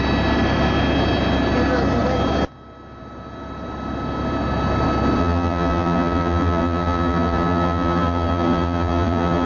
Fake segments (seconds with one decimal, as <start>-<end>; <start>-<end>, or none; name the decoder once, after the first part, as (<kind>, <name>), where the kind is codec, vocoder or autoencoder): 5.2-9.5 (vocoder, BigVGAN v2)